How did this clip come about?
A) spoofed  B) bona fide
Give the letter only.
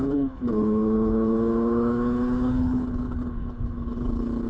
A